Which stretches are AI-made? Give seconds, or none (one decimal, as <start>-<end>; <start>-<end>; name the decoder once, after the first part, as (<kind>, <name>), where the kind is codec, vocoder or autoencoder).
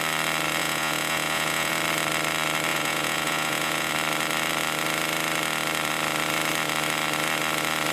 0.6-1.7 (vocoder, Vocos); 2.7-3.9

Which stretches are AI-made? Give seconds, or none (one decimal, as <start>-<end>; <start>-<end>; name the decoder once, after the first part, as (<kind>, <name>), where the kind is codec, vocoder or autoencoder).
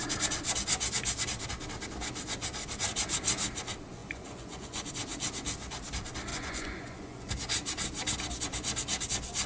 4.0-4.9 (vocoder, Vocos); 6.3-7.3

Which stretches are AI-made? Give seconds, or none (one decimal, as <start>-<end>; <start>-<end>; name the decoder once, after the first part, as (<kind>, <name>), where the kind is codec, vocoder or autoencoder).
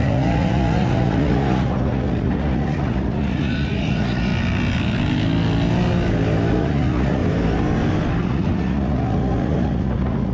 0.0-4.3 (vocoder, Vocos); 6.5-7.2; 8.2-10.3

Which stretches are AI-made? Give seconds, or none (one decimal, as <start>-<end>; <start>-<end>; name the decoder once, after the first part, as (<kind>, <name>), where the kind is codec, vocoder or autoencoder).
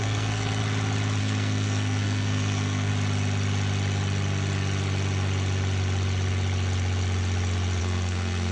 0.0-0.6 (codec, SNAC); 1.2-2.9; 7.8-8.5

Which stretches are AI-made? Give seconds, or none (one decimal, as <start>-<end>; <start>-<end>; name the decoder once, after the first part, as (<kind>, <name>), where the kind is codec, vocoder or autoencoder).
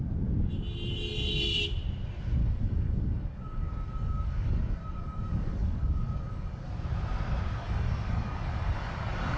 2.4-6.7 (codec, DAC); 7.6-9.4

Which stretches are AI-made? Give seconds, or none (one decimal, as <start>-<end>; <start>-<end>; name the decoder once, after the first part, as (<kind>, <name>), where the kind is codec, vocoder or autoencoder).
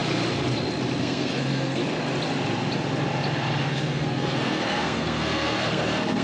1.0-1.8 (codec, SNAC); 3.6-6.2